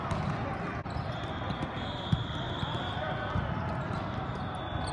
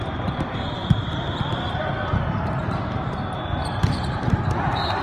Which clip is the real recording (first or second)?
first